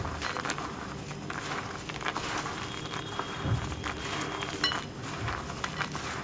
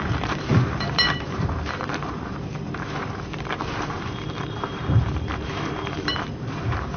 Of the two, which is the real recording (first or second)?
first